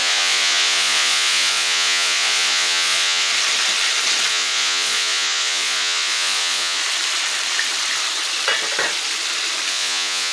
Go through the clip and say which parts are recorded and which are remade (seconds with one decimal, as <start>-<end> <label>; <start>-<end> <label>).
0.0-3.3 remade; 3.3-4.3 recorded; 4.3-6.8 remade; 6.8-9.7 recorded; 9.7-10.3 remade